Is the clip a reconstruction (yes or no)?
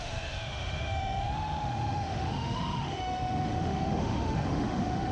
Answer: yes